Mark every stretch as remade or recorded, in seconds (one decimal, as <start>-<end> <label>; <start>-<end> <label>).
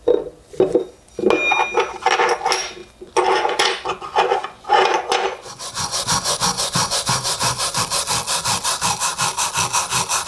0.0-2.8 recorded; 2.8-7.8 remade; 7.8-10.3 recorded